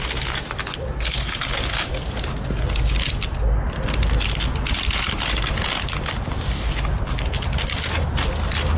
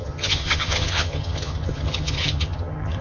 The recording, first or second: first